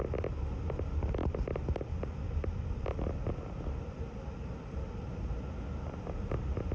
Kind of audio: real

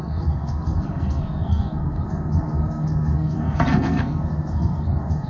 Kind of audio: fake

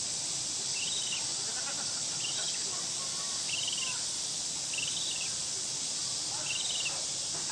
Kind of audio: real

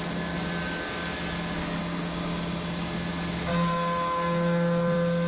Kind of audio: real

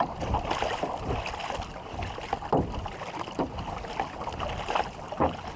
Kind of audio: real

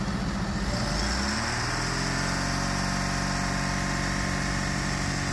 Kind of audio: real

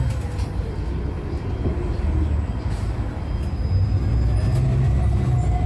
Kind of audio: real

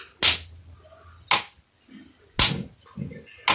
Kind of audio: real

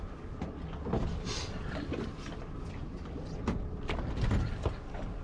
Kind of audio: real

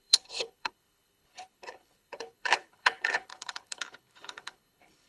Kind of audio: fake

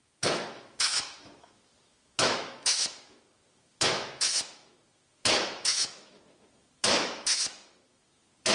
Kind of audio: fake